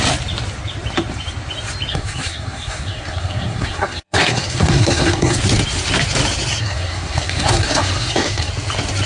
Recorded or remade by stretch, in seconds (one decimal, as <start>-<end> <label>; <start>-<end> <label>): 0.0-1.9 recorded; 1.9-5.4 remade; 5.4-6.6 recorded; 6.6-8.5 remade; 8.5-9.1 recorded